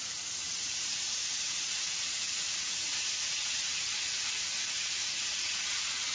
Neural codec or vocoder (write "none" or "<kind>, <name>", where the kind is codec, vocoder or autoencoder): vocoder, Vocos